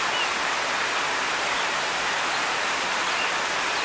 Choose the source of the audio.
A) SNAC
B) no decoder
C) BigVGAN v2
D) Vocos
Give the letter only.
B